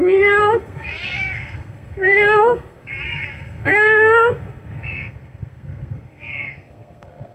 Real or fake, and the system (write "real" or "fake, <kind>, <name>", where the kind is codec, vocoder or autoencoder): fake, codec, SNAC